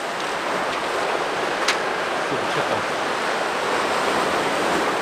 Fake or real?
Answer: real